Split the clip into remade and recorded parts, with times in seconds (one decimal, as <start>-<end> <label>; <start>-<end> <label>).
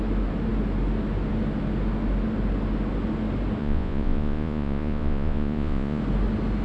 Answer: 0.0-3.6 recorded; 3.6-6.0 remade; 6.0-6.6 recorded